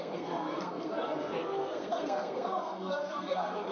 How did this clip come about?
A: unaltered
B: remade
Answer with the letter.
B